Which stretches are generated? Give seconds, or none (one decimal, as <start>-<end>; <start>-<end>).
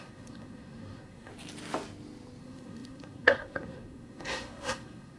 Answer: 0.0-1.3; 2.4-5.2